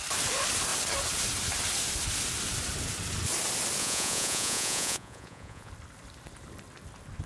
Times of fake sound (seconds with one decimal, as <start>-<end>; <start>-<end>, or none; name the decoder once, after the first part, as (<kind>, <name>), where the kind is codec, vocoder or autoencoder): 3.8-5.7 (vocoder, Vocos)